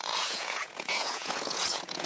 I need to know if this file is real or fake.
fake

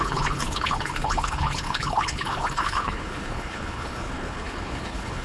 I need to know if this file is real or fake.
fake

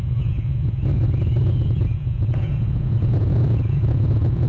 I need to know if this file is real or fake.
fake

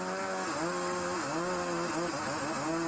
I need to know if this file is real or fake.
real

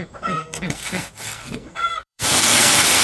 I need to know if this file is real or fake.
fake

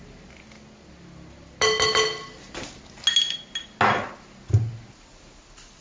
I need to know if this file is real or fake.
real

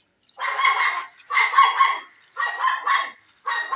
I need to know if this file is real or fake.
real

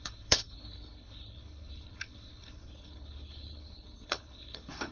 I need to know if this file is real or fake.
fake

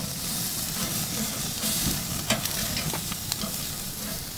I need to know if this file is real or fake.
real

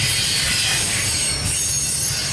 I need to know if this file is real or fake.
real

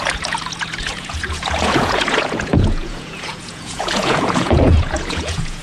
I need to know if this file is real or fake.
fake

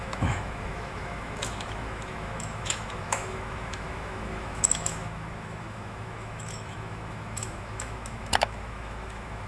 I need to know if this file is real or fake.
fake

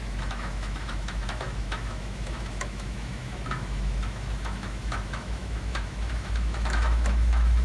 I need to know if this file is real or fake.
fake